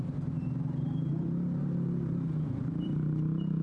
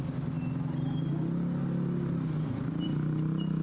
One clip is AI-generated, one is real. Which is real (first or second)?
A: second